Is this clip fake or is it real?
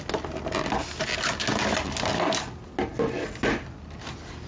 real